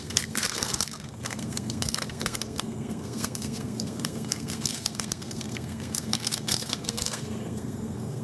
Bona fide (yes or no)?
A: no